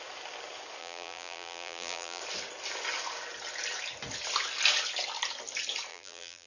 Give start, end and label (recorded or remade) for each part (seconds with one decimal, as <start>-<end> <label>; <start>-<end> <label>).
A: 0.0-0.8 recorded; 0.8-2.2 remade; 2.2-5.9 recorded; 5.9-6.5 remade